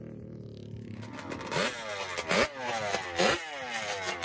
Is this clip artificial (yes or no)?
no